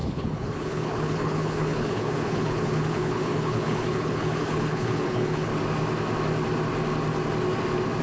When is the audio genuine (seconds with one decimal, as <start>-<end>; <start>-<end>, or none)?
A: 5.5-8.0